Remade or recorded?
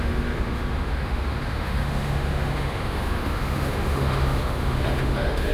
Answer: remade